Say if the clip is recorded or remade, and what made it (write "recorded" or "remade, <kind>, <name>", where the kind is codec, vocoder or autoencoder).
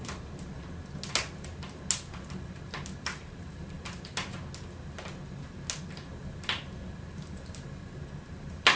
recorded